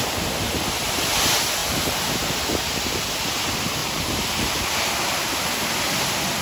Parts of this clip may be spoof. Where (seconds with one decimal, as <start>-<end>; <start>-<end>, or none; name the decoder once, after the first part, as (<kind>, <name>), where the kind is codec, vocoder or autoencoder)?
1.6-2.1 (vocoder, BigVGAN v2); 3.8-4.9